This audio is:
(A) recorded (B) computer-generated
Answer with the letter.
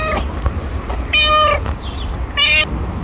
A